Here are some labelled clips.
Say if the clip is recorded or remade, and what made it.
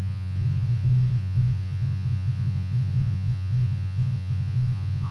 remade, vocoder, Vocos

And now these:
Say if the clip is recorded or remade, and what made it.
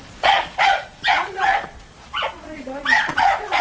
remade, vocoder, Vocos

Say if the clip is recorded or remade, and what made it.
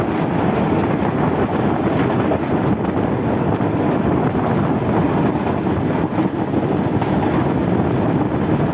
recorded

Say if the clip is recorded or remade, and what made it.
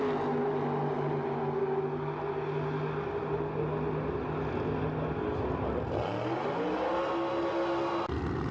recorded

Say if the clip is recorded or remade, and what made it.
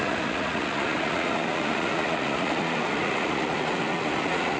remade, vocoder, Vocos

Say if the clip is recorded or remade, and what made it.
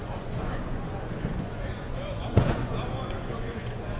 remade, vocoder, Vocos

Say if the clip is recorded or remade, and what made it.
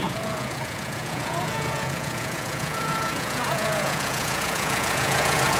remade, vocoder, Vocos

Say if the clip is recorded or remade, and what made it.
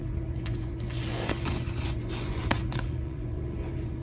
remade, vocoder, Vocos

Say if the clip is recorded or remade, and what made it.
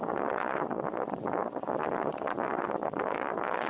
remade, vocoder, Vocos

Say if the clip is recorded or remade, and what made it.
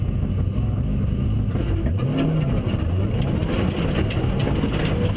recorded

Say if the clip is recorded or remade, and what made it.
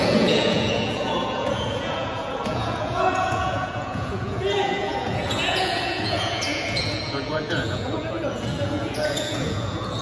remade, vocoder, Vocos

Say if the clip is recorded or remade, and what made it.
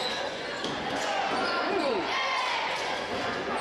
remade, vocoder, Vocos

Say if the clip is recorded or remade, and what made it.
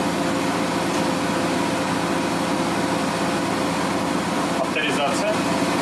recorded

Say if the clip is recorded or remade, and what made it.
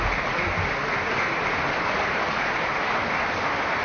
recorded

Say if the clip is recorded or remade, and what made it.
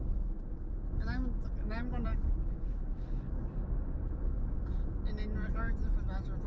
recorded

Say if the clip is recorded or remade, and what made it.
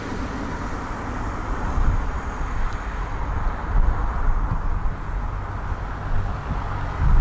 recorded